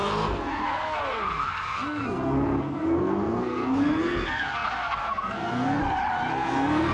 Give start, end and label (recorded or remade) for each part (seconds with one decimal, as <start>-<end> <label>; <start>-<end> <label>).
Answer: 0.0-5.8 remade; 5.8-6.3 recorded; 6.3-6.9 remade